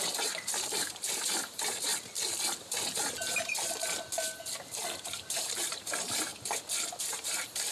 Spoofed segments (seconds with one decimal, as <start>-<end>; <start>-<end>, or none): 0.0-1.9; 2.6-3.0; 5.0-6.3; 7.0-7.7